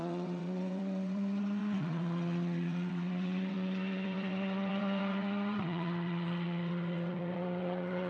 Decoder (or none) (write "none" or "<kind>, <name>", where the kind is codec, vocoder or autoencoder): vocoder, WaveNeXt